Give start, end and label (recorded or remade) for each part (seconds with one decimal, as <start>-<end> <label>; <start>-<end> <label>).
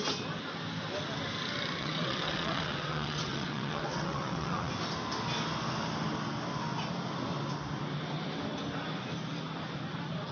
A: 0.0-1.8 recorded; 1.8-4.7 remade; 4.7-10.3 recorded